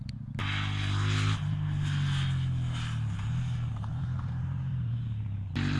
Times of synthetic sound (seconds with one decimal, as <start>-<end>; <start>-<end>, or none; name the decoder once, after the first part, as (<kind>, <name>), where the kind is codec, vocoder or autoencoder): 0.0-0.4 (vocoder, BigVGAN v2); 3.9-5.8